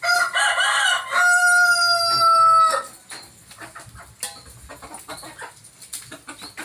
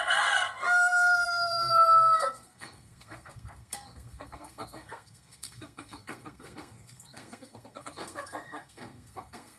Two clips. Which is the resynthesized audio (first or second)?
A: second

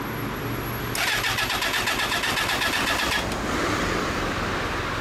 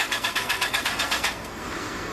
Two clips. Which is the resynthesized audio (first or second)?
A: second